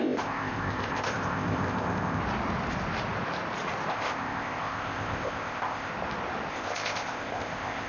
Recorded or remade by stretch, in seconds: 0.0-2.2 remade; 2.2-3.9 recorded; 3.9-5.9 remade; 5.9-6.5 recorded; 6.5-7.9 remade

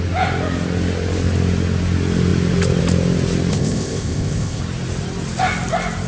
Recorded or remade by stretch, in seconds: 0.0-3.5 recorded; 3.5-4.6 remade; 4.6-6.1 recorded